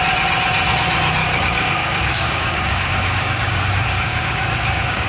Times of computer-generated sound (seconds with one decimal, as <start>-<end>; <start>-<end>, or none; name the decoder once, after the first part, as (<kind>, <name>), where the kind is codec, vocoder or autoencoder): 1.2-3.6 (codec, DAC); 4.1-5.1